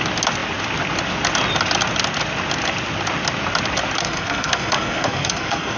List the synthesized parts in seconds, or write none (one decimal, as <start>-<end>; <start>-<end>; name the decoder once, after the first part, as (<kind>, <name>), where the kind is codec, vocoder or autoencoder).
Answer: 4.0-5.8 (codec, SNAC)